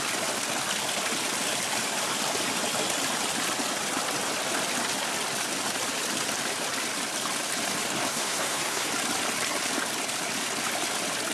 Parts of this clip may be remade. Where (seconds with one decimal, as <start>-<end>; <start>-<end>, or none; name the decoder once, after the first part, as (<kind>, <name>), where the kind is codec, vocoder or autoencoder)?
8.1-8.9 (codec, SNAC)